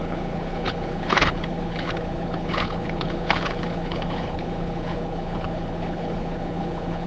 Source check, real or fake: fake